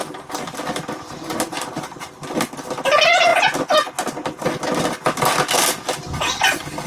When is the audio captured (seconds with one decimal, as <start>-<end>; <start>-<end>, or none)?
2.1-6.9